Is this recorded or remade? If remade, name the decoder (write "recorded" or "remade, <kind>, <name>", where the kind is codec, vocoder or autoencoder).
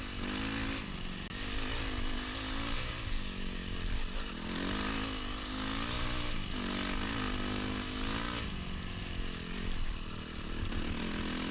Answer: recorded